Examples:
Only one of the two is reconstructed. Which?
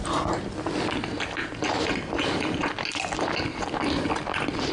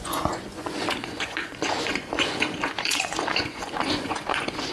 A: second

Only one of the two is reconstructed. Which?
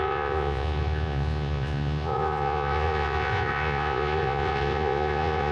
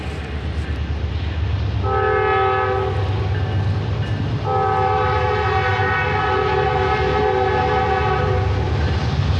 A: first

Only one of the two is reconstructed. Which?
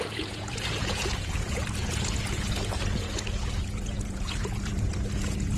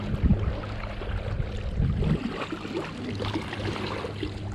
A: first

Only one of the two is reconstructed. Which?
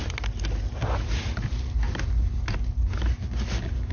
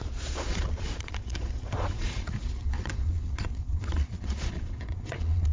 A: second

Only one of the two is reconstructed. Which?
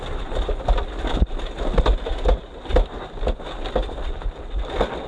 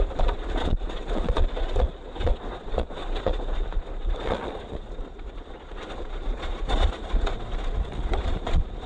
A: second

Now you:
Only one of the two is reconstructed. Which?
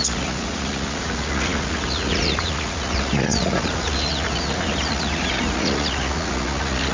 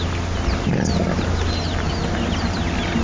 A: first